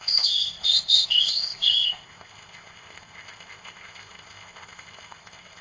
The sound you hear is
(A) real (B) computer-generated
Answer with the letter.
B